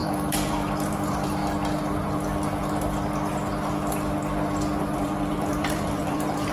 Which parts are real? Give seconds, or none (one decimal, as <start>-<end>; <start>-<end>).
1.4-4.8